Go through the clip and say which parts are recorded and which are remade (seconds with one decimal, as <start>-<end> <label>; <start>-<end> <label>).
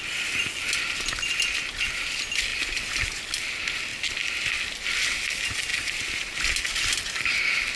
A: 0.0-7.8 recorded